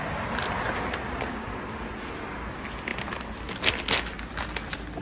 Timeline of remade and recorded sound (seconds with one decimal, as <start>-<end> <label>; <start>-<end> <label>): 0.0-5.0 recorded